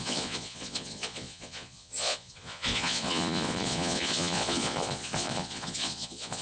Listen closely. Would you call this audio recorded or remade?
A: remade